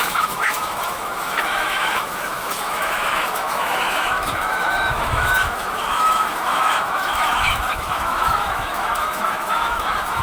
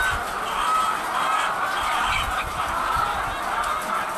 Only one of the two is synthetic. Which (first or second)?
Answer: first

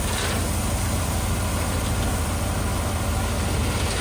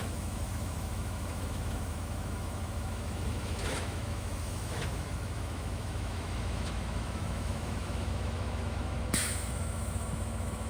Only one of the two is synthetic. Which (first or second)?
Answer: second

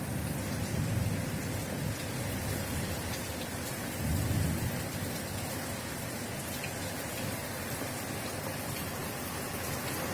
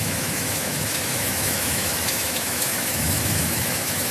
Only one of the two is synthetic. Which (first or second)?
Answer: second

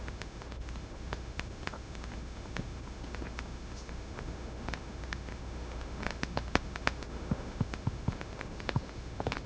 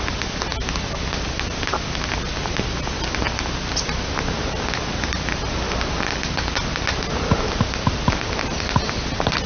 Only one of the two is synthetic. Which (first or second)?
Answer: first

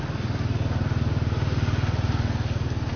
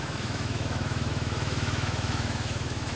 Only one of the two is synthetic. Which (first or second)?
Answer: second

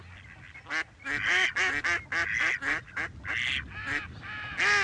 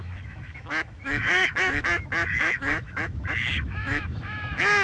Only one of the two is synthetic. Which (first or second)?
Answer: second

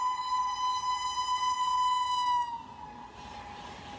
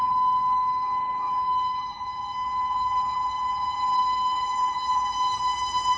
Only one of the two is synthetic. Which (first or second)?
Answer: second